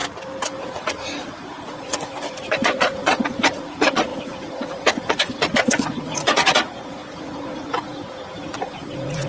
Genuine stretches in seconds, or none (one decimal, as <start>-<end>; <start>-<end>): 0.0-0.6